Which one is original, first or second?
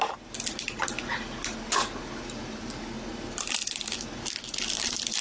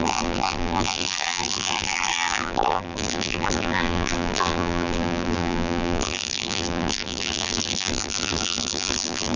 first